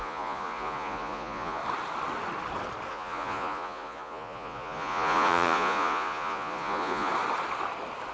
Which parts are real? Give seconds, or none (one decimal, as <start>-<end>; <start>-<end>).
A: 1.6-2.9; 7.1-8.1